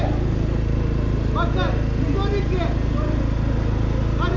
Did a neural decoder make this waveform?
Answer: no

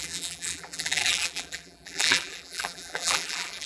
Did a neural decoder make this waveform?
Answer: yes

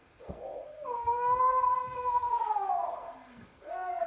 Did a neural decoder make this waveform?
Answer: yes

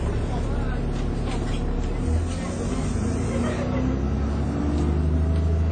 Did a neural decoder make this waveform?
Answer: no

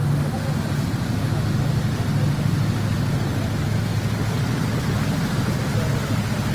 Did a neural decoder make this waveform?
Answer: no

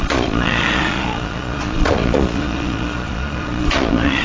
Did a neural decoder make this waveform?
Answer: yes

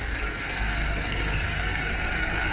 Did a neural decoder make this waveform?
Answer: yes